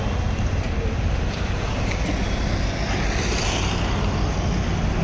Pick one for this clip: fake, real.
real